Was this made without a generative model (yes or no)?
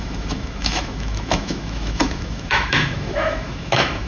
no